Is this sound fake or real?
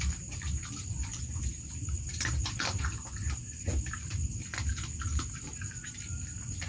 fake